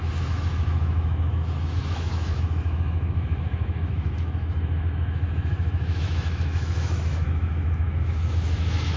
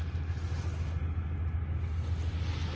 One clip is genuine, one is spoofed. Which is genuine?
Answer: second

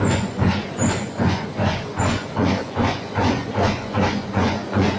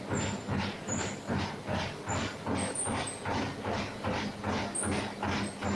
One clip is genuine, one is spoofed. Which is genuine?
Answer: second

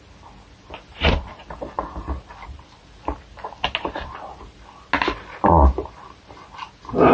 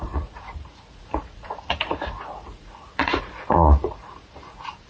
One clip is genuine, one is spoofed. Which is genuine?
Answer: first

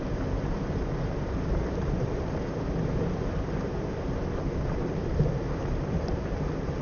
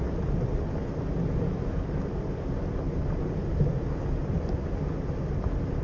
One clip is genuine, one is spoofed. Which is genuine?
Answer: second